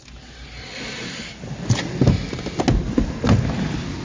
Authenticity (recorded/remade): recorded